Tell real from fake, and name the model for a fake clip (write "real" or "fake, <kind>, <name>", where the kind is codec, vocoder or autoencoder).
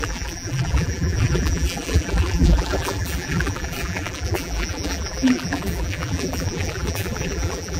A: fake, vocoder, BigVGAN v2